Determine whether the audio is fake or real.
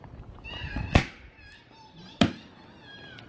real